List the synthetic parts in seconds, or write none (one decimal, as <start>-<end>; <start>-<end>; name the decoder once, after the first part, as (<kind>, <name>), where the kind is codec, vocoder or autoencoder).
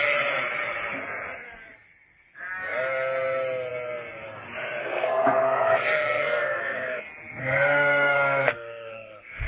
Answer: 4.8-7.0 (codec, SNAC); 7.4-9.5